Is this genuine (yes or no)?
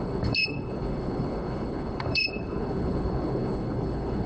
no